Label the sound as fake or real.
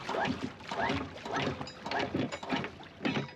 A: fake